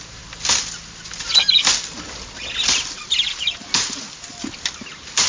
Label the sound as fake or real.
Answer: real